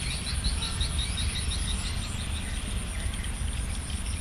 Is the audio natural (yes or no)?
yes